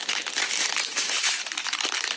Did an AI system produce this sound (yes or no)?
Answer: no